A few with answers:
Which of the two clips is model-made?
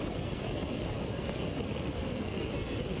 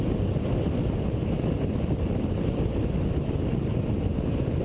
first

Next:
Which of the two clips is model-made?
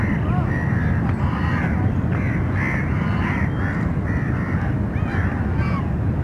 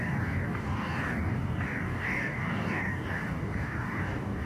second